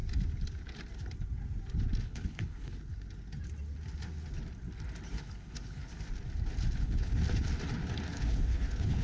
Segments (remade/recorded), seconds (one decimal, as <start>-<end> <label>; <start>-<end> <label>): 0.0-2.0 recorded; 2.0-2.7 remade; 2.7-5.1 recorded; 5.1-5.9 remade; 5.9-6.8 recorded; 6.8-7.2 remade; 7.2-8.1 recorded; 8.1-9.0 remade